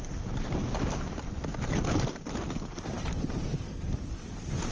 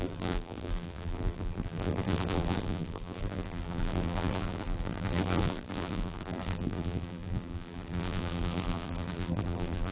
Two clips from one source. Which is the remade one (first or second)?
second